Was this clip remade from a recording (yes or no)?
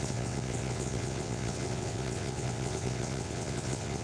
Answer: yes